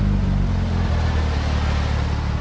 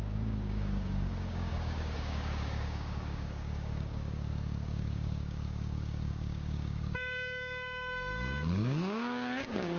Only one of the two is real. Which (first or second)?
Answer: first